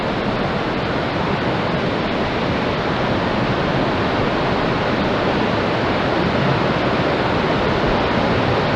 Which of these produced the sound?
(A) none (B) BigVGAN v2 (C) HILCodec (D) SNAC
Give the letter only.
A